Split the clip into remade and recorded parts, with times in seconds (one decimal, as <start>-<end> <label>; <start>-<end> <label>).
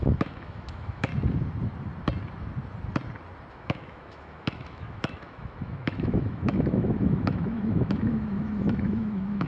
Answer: 0.0-1.1 remade; 1.1-3.5 recorded; 3.5-9.5 remade